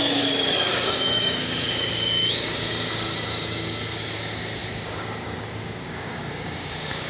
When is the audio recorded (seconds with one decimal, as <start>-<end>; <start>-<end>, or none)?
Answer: none

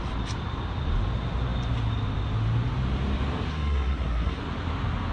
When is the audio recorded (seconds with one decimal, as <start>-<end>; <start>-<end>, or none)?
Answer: 0.0-3.5; 4.4-5.1